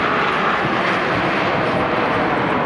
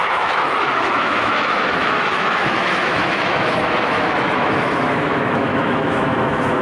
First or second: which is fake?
second